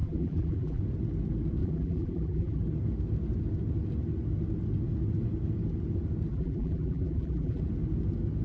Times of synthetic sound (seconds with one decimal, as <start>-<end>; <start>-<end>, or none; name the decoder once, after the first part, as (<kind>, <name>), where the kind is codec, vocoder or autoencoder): 0.0-0.8 (vocoder, BigVGAN v2); 1.6-2.6; 6.3-7.6